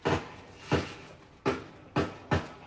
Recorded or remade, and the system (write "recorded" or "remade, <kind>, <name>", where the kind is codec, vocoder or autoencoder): recorded